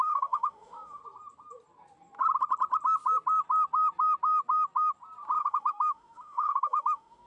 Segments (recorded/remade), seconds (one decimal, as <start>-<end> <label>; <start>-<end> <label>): 0.0-1.0 remade; 1.0-5.4 recorded; 5.4-7.3 remade